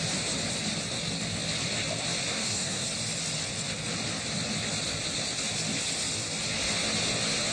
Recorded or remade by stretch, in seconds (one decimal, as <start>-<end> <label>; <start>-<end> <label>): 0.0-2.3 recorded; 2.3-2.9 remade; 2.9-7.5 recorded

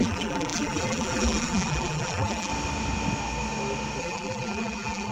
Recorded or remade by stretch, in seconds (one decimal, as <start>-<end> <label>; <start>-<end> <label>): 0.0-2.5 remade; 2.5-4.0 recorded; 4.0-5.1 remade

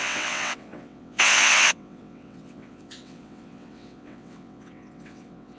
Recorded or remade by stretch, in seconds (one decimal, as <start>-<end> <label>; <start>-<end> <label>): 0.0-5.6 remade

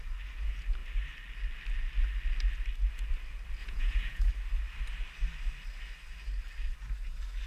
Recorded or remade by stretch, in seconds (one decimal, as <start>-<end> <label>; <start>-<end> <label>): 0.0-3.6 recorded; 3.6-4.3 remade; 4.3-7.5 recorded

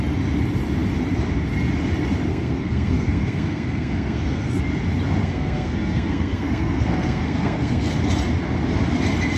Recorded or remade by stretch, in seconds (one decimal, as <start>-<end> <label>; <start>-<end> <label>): 0.0-2.3 recorded; 2.3-4.6 remade; 4.6-5.2 recorded; 5.2-7.9 remade; 7.9-9.4 recorded

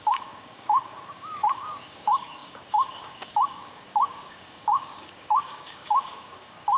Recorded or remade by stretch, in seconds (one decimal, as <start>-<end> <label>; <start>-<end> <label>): 0.0-6.8 remade

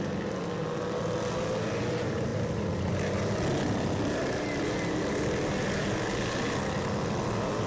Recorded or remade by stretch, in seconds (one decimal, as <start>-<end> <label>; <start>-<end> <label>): 0.0-7.7 recorded

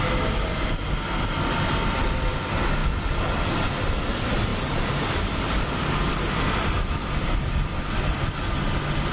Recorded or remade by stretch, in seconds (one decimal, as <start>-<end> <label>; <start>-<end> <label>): 0.0-9.1 recorded